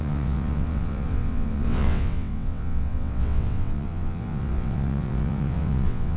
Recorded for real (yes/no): no